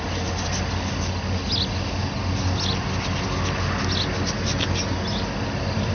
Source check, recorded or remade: recorded